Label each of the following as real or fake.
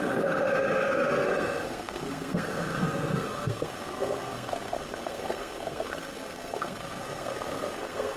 fake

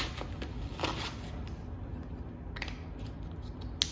real